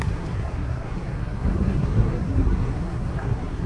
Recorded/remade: remade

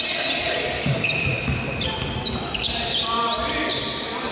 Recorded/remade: recorded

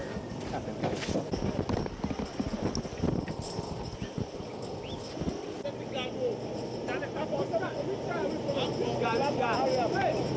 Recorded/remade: recorded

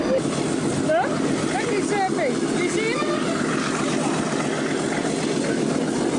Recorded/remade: recorded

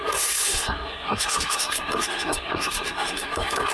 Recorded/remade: remade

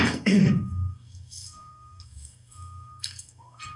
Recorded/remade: remade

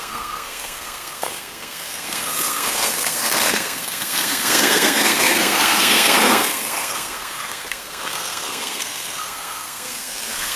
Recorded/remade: remade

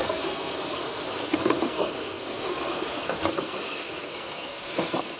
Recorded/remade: remade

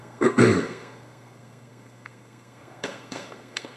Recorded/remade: remade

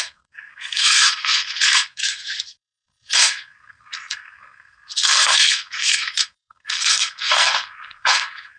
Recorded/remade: remade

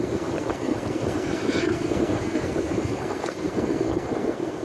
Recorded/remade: remade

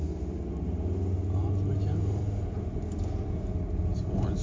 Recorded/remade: recorded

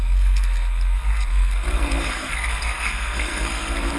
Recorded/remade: remade